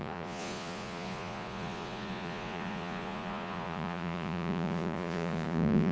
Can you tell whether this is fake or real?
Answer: fake